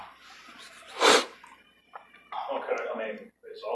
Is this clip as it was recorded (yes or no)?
yes